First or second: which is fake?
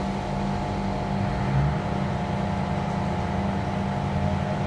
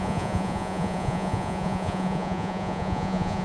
second